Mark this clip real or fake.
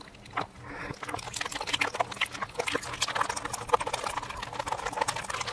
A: real